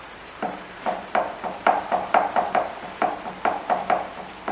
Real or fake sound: real